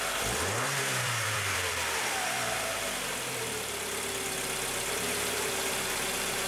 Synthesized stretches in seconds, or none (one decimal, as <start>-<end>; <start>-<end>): 0.7-4.2

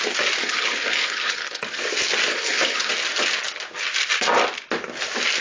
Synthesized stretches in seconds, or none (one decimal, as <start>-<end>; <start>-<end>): 0.4-1.6; 2.3-2.9

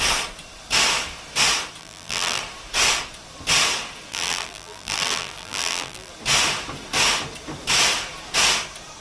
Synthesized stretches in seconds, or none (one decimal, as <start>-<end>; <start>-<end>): 1.8-2.4; 4.1-6.1

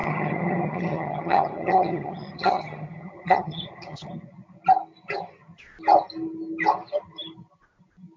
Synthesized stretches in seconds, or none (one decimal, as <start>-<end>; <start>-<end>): 0.0-4.1